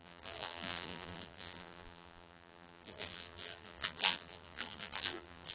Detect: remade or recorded remade